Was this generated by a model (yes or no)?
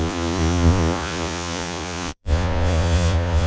yes